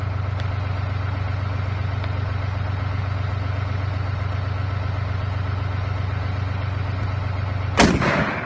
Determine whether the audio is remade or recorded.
recorded